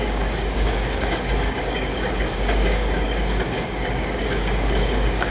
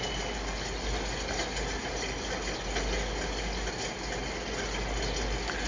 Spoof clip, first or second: first